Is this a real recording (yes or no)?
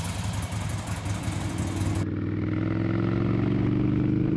yes